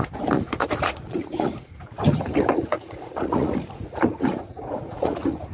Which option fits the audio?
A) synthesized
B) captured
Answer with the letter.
A